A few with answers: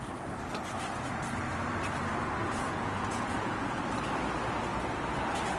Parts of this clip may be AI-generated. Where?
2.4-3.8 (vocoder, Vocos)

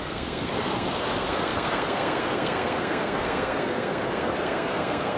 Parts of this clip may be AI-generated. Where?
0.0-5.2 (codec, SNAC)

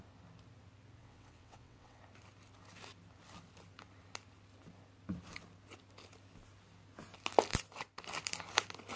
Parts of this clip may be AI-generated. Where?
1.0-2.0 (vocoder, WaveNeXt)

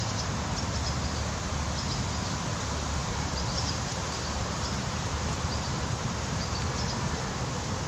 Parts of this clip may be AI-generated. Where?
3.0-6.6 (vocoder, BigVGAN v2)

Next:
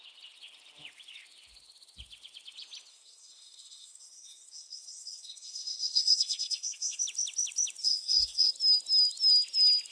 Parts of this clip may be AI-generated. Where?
2.9-7.0 (codec, SNAC); 7.8-8.5

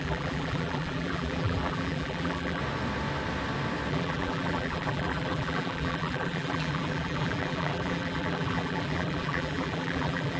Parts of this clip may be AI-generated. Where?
0.0-2.6 (vocoder, BigVGAN v2); 3.9-10.4

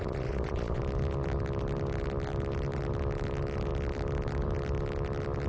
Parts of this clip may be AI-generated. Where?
0.0-0.8 (vocoder, WaveNeXt)